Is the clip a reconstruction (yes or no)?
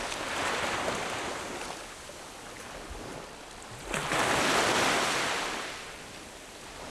no